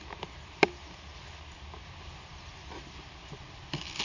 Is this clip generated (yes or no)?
no